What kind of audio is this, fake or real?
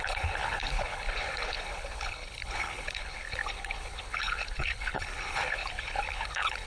fake